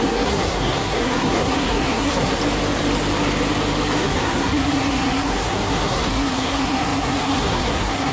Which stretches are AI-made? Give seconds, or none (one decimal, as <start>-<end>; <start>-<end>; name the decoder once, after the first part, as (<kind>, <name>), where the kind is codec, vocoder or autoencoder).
0.0-2.4 (codec, SNAC); 4.0-8.1